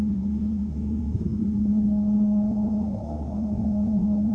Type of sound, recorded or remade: remade